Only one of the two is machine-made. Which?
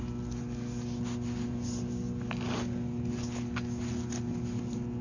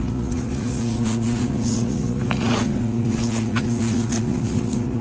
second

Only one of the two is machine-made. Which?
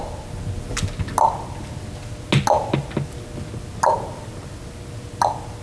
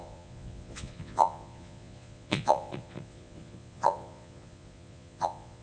second